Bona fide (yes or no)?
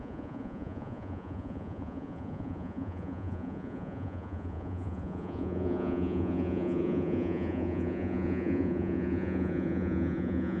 no